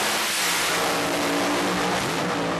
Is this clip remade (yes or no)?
no